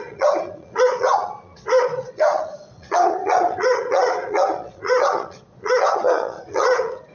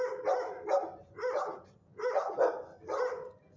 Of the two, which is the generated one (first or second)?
first